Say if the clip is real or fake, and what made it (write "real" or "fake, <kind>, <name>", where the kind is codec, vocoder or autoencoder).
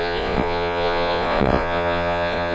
fake, vocoder, Vocos